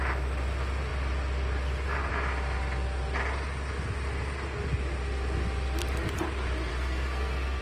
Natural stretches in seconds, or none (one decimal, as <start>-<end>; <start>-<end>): 0.0-6.7